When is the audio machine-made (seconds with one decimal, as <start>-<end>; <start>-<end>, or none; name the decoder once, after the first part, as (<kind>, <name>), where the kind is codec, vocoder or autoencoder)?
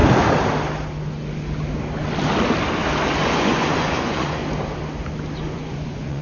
3.1-4.4 (vocoder, Vocos); 5.4-6.2